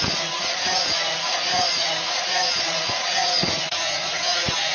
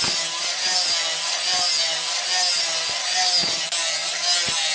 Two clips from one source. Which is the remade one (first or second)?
first